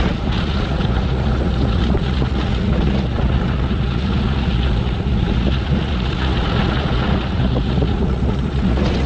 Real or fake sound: fake